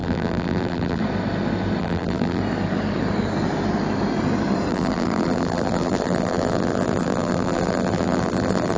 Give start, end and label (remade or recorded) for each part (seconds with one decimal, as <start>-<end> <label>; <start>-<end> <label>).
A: 0.0-1.0 remade; 1.0-1.8 recorded; 1.8-2.4 remade; 2.4-4.7 recorded; 4.7-8.8 remade